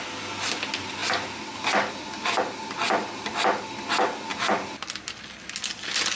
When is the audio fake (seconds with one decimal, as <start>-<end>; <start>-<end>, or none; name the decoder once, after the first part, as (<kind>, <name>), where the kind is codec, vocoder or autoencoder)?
1.0-2.4 (vocoder, BigVGAN v2); 4.3-5.1